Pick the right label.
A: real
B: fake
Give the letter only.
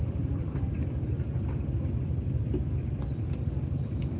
A